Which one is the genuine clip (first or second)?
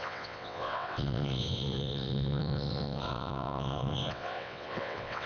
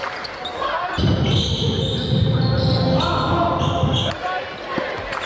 second